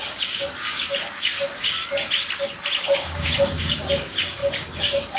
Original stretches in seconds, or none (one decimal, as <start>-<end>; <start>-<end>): 1.8-2.8